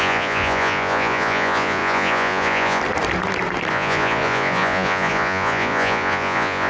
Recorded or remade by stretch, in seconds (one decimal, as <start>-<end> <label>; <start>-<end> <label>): 0.0-2.8 remade; 2.8-3.7 recorded; 3.7-6.7 remade